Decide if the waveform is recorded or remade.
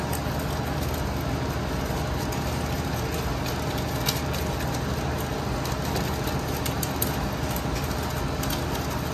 recorded